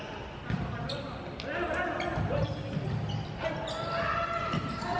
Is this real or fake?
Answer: real